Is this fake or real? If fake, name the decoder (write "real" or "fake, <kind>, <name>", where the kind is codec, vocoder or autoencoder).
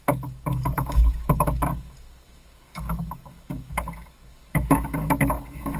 fake, codec, DAC